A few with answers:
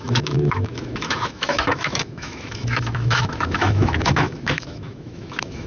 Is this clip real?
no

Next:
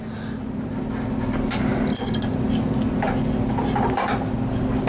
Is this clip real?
yes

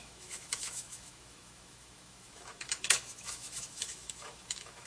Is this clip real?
no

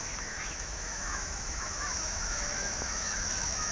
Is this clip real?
no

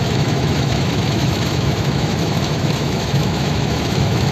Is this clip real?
no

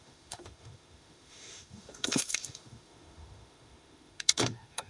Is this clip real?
no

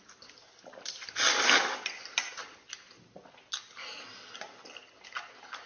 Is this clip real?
yes